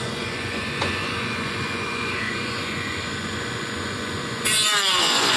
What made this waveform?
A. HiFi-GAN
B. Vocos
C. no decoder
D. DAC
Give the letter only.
B